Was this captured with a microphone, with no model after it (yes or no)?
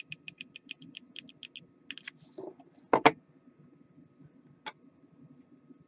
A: yes